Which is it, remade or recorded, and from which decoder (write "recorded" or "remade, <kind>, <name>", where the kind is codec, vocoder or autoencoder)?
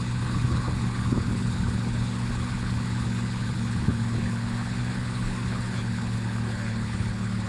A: remade, codec, HILCodec